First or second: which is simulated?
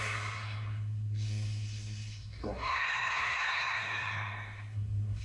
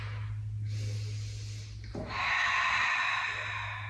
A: first